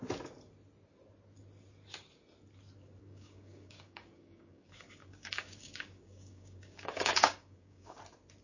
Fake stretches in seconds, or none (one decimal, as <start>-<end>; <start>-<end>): 3.0-8.0